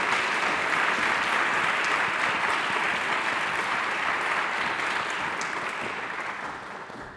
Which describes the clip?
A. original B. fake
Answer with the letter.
A